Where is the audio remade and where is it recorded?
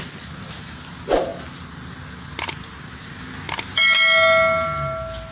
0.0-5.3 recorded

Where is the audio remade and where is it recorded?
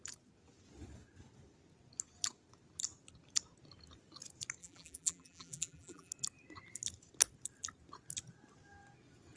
0.0-4.6 recorded; 4.6-6.1 remade; 6.1-9.4 recorded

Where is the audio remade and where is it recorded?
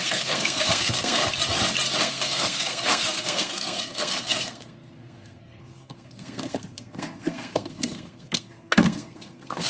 0.0-1.2 remade; 1.2-2.0 recorded; 2.0-9.7 remade